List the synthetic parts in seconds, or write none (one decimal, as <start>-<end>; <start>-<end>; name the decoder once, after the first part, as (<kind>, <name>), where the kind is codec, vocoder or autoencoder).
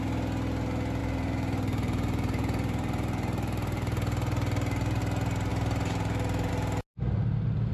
1.0-5.0 (vocoder, BigVGAN v2); 5.5-6.5